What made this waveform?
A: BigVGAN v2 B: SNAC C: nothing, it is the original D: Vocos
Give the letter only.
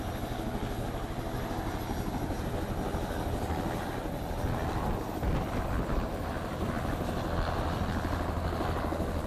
C